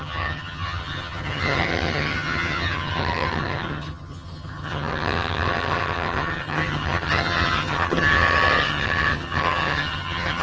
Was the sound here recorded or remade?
remade